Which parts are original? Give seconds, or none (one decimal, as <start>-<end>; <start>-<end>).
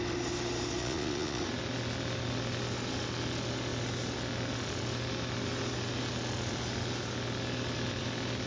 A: 0.0-0.8; 1.4-8.5